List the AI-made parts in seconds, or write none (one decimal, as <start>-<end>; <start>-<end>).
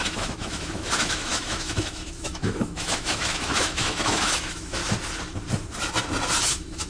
0.0-4.8; 6.4-6.9